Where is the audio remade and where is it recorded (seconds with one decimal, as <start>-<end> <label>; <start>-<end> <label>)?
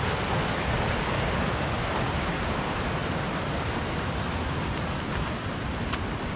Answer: 0.0-6.4 recorded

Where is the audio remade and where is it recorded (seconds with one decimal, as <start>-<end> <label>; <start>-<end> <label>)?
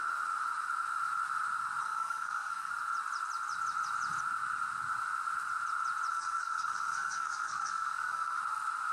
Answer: 0.0-1.8 recorded; 1.8-2.7 remade; 2.7-6.1 recorded; 6.1-8.4 remade; 8.4-8.9 recorded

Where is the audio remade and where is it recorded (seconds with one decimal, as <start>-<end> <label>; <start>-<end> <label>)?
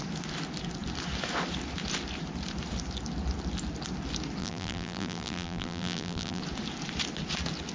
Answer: 0.0-4.4 recorded; 4.4-6.4 remade; 6.4-7.7 recorded